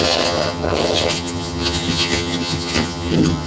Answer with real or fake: fake